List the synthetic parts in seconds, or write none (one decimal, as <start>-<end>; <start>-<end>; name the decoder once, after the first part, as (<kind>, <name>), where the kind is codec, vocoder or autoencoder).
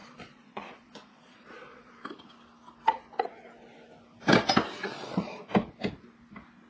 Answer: 0.0-1.9 (vocoder, Vocos); 4.8-5.4